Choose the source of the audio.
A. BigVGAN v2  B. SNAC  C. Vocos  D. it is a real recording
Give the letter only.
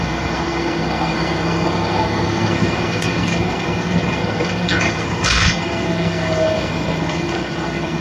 B